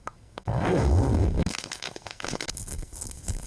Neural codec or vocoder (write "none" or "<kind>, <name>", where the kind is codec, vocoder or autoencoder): codec, SNAC